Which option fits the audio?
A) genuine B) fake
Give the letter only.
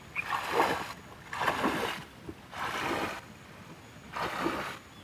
A